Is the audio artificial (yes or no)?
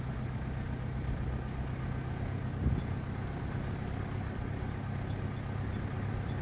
no